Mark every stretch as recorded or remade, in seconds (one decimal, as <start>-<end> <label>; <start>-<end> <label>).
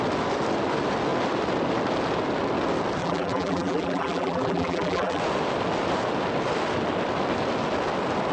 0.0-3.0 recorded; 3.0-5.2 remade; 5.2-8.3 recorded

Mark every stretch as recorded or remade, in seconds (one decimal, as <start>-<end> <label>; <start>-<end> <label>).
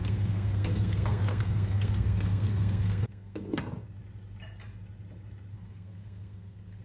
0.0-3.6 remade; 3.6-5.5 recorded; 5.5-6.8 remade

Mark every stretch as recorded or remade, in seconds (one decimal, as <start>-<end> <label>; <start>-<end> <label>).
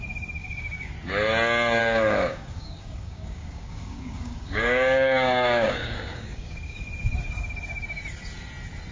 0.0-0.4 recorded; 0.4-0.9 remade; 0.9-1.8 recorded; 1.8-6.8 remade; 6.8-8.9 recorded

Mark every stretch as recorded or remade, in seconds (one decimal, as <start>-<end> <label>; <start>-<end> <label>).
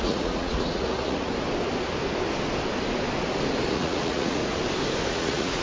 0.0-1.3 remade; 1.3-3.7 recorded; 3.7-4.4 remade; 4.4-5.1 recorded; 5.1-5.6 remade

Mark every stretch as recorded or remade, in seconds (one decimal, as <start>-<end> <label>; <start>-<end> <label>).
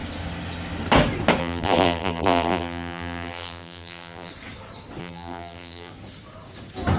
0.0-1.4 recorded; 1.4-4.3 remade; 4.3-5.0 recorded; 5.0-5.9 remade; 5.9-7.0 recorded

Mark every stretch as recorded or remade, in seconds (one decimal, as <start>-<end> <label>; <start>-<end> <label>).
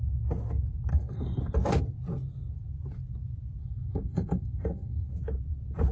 0.0-0.9 recorded; 0.9-1.4 remade; 1.4-3.6 recorded; 3.6-5.1 remade; 5.1-5.9 recorded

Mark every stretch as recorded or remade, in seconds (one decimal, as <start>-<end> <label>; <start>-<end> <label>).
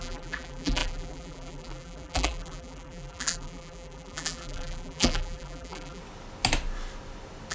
0.0-6.0 remade; 6.0-7.5 recorded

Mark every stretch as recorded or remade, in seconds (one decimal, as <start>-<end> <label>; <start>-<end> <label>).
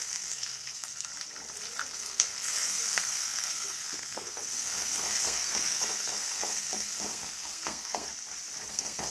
0.0-1.1 remade; 1.1-1.9 recorded; 1.9-8.1 remade; 8.1-8.7 recorded; 8.7-9.1 remade